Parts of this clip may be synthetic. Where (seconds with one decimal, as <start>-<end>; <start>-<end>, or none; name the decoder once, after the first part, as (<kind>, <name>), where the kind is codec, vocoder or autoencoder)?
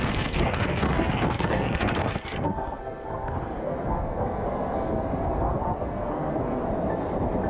0.0-6.6 (codec, SNAC)